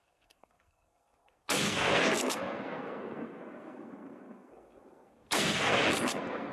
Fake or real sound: fake